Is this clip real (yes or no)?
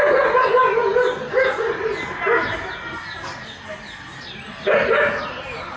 yes